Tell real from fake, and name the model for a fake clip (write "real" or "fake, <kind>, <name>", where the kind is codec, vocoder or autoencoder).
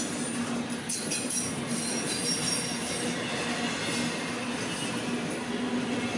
real